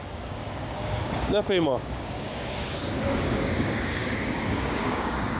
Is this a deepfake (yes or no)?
yes